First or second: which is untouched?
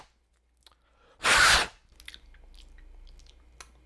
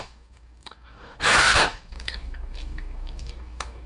first